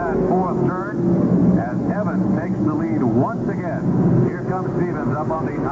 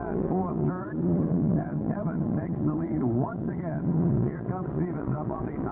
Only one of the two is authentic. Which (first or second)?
first